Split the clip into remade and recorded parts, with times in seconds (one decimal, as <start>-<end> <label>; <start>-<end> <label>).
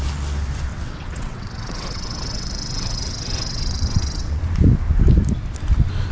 0.0-0.7 recorded; 0.7-4.4 remade; 4.4-6.1 recorded